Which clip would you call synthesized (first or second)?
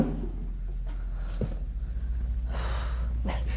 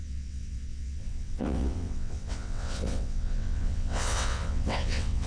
second